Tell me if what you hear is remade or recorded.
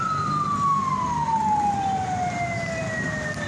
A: recorded